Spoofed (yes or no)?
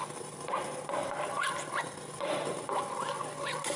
no